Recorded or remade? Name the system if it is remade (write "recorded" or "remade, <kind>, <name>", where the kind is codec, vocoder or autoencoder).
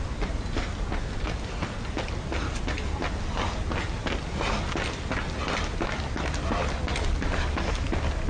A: recorded